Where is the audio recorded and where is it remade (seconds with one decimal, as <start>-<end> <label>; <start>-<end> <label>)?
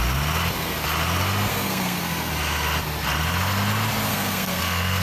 0.0-1.5 recorded; 1.5-2.3 remade; 2.3-4.1 recorded; 4.1-5.0 remade